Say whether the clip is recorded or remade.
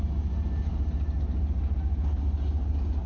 recorded